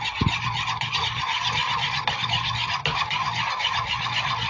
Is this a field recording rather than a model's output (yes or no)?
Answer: yes